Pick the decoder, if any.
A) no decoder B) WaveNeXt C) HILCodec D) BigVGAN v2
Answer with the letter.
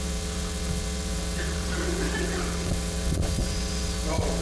B